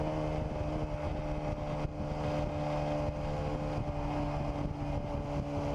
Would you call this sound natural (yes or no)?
yes